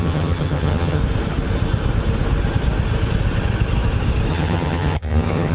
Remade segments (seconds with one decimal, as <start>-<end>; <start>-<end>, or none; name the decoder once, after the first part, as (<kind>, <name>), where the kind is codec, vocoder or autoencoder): 0.0-1.0 (vocoder, HiFi-GAN); 4.3-5.5